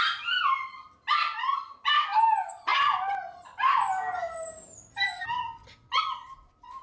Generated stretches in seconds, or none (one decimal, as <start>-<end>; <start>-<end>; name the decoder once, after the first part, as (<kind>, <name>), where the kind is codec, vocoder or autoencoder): none